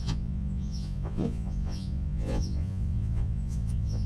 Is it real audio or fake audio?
fake